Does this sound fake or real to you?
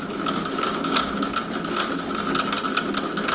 real